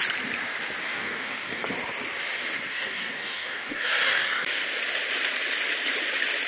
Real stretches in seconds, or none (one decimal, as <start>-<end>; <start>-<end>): 0.0-0.8; 1.7-2.7; 4.6-6.5

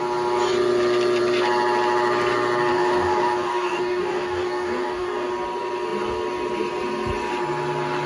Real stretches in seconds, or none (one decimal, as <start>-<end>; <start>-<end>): 0.0-2.7; 5.3-8.1

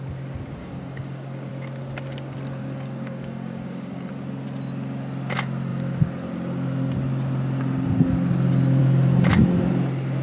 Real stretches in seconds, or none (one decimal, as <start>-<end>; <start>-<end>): 0.0-0.6; 1.5-2.6; 4.1-10.2

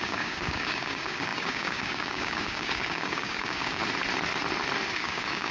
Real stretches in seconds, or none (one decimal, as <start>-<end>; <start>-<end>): 3.8-4.9

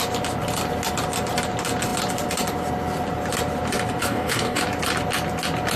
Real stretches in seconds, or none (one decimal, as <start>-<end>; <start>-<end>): 0.0-4.0; 4.6-5.8

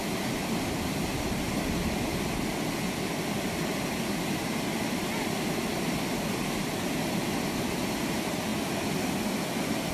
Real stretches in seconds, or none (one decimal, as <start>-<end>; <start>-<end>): 0.0-9.9